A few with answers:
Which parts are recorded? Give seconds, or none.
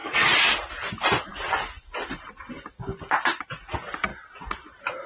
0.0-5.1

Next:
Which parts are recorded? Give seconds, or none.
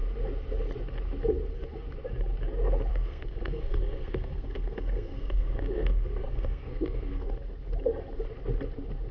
0.0-2.9; 7.3-9.1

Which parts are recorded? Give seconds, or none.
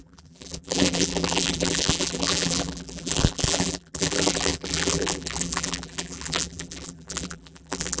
none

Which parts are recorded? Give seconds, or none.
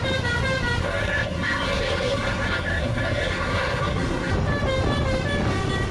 0.0-0.8; 4.3-5.9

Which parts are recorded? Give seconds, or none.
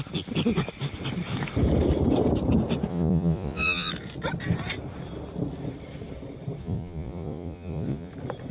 0.0-2.9; 3.9-6.6; 8.1-8.5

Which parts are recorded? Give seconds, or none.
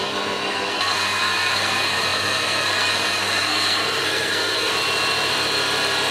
4.7-6.1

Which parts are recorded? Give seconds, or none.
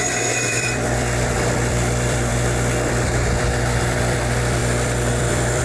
2.3-2.9